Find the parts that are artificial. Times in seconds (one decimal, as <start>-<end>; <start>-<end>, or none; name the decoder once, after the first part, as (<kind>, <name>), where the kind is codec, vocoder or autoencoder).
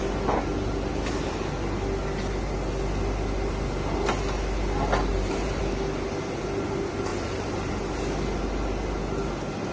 5.1-5.6 (vocoder, BigVGAN v2); 7.1-7.7